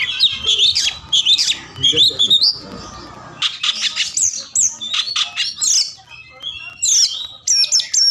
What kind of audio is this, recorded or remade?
recorded